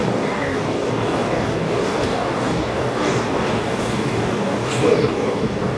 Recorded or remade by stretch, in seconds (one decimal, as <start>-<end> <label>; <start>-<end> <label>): 0.0-5.8 remade